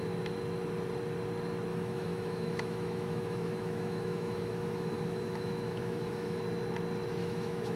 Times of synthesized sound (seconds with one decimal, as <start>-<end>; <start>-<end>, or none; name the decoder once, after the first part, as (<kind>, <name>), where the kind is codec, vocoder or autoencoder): 1.7-6.4 (autoencoder, DAC-VAE); 7.2-7.8